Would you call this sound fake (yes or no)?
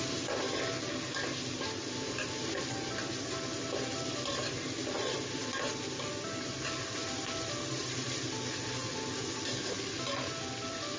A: no